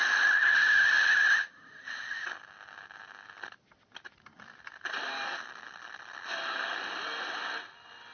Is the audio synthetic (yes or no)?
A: no